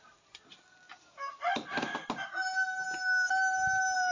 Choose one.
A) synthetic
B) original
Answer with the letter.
B